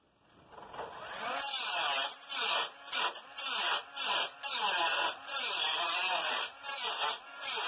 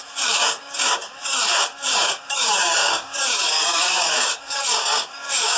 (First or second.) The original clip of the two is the first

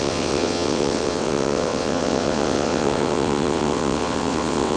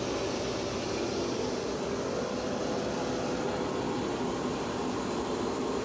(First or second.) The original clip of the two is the second